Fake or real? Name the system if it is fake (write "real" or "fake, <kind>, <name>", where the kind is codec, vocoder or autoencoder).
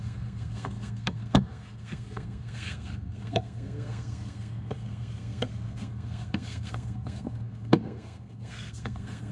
fake, codec, SNAC